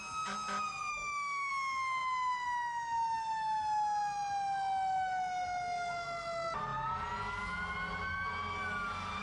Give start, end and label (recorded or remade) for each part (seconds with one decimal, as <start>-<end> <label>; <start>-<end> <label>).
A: 0.0-0.9 recorded; 0.9-1.5 remade; 1.5-9.2 recorded